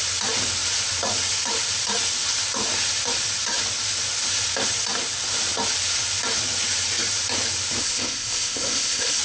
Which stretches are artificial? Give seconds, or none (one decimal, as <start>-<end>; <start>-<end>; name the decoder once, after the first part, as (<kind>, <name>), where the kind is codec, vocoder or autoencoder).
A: 7.8-9.2 (codec, ZipCodec)